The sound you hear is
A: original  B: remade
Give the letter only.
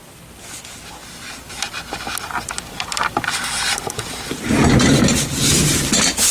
A